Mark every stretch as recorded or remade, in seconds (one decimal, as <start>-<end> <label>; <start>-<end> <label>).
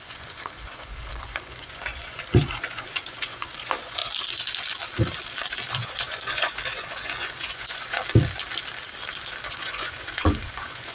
0.0-4.0 remade; 4.0-5.7 recorded; 5.7-8.0 remade; 8.0-9.5 recorded; 9.5-10.9 remade